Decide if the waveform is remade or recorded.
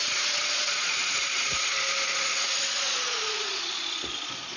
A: remade